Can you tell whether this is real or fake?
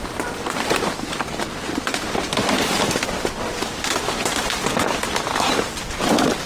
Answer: real